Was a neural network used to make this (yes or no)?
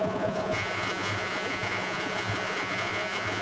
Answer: yes